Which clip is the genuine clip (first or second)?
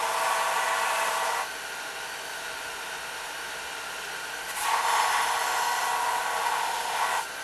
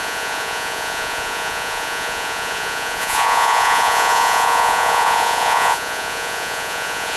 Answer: first